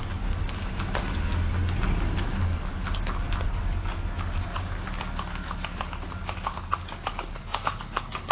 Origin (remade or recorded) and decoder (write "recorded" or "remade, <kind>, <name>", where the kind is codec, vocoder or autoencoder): recorded